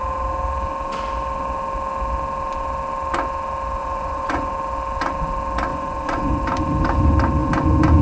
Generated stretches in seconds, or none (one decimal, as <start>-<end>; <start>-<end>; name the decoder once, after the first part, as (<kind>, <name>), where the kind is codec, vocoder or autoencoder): 3.8-4.5 (vocoder, Vocos); 5.7-6.3